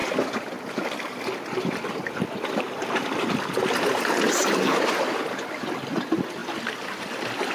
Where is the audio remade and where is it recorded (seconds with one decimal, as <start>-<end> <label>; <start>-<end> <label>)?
0.0-7.5 recorded